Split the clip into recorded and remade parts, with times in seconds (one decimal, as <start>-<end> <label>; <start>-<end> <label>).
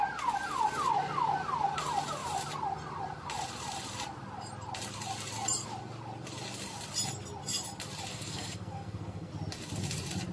0.0-8.1 recorded; 8.1-9.3 remade; 9.3-10.3 recorded